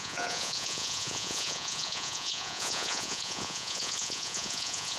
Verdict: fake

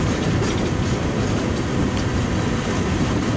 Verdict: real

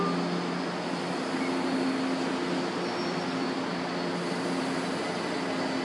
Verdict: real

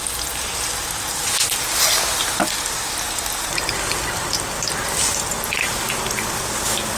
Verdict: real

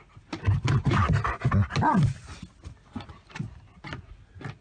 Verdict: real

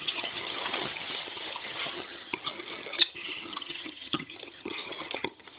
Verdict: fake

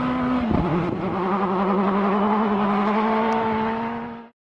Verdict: real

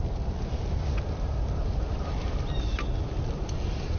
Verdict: real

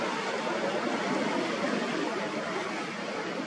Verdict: real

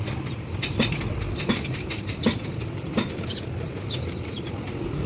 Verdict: fake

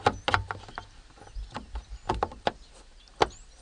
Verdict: real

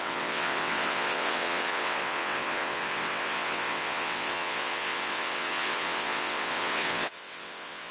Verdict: fake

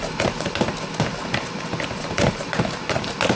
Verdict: fake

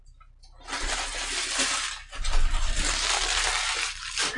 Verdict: real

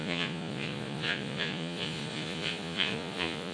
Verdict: fake